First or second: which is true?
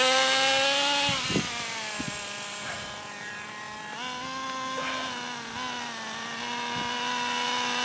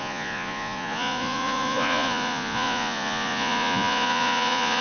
first